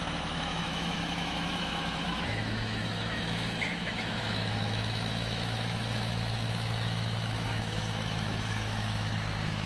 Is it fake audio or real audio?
fake